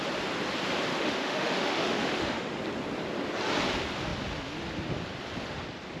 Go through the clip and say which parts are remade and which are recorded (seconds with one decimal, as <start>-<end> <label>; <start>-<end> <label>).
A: 0.0-0.9 recorded; 0.9-2.6 remade; 2.6-6.0 recorded